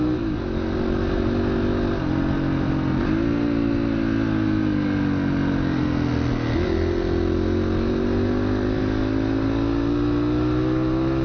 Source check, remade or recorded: recorded